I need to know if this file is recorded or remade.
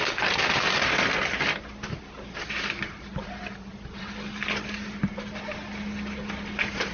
recorded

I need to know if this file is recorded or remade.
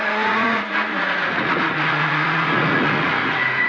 remade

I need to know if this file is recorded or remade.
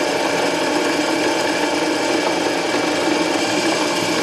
recorded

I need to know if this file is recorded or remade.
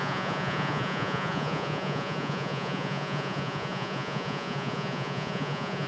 remade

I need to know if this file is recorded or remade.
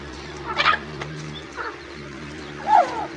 remade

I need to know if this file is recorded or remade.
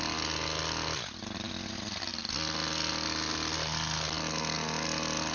recorded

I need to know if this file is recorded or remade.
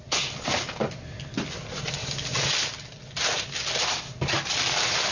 recorded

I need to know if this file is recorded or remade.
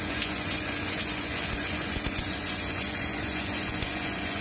remade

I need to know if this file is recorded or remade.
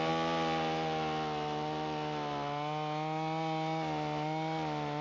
recorded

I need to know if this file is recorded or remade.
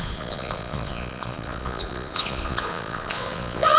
remade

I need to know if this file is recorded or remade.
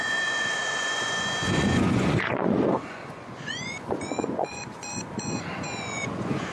remade